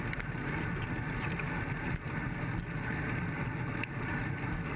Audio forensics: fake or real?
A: real